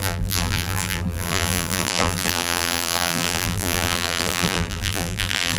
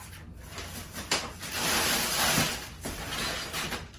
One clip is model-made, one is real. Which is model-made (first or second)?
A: first